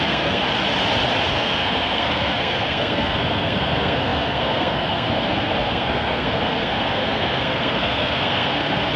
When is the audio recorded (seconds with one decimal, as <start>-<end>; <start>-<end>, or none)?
0.4-1.3